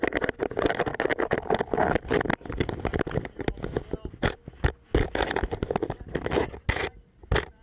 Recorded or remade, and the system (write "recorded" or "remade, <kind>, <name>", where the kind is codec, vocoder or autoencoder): recorded